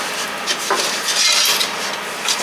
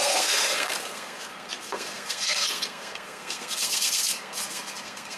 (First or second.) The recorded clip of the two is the first